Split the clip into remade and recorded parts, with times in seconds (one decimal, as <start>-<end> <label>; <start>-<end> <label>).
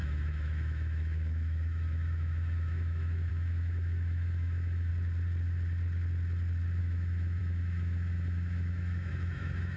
0.0-4.9 remade; 4.9-6.8 recorded; 6.8-9.8 remade